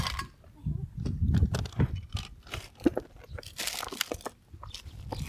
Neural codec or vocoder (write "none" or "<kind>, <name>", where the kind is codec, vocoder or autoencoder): none